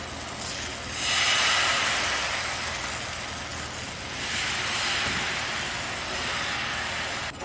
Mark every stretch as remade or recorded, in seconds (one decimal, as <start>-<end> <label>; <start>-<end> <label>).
0.0-7.4 recorded